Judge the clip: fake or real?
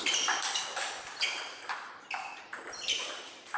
real